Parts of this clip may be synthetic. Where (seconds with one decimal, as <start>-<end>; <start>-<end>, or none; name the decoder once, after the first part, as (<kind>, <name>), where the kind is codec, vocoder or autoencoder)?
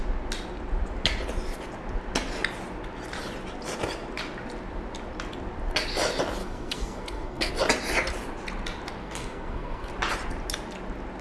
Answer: 6.4-7.5 (codec, SNAC); 9.0-9.9